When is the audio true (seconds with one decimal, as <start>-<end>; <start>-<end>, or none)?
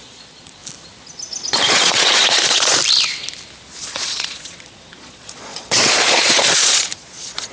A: 0.6-1.7; 2.7-3.8